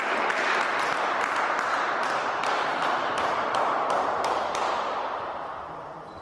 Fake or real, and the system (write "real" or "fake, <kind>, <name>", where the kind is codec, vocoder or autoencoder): fake, vocoder, BigVGAN v2